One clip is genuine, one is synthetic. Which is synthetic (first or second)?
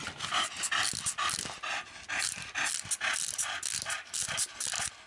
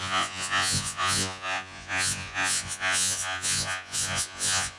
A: second